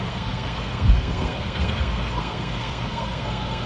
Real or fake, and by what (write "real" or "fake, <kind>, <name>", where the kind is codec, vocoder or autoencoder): fake, codec, SNAC